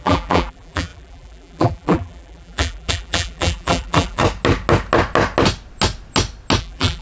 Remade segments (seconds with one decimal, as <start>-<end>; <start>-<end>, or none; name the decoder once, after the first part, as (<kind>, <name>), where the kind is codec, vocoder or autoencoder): 0.0-4.2 (vocoder, BigVGAN v2); 6.6-7.0